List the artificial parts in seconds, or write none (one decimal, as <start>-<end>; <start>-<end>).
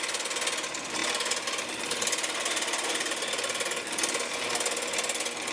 none